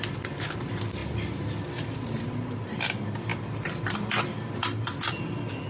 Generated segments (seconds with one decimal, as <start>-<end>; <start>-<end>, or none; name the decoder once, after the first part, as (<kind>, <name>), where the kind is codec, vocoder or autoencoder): none